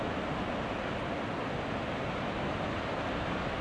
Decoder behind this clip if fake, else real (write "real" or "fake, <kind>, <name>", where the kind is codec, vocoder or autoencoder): real